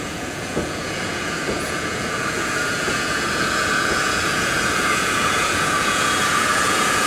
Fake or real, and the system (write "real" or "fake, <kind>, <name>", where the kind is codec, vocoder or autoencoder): fake, vocoder, Vocos